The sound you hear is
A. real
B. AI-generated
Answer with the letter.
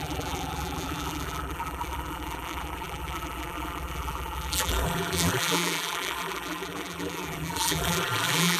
B